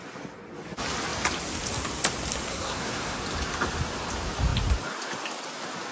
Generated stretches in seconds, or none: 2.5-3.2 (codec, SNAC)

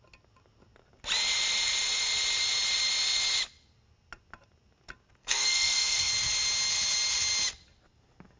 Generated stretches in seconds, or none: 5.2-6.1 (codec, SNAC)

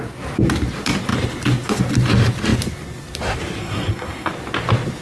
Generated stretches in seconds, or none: 3.6-4.3 (codec, SNAC)

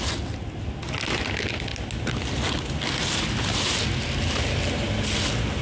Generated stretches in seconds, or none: none